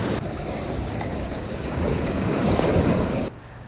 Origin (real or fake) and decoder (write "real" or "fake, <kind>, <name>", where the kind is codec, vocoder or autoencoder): fake, codec, DAC